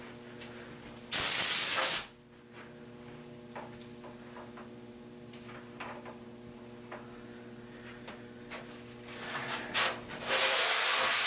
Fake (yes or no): no